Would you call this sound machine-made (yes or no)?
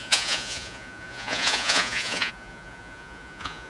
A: yes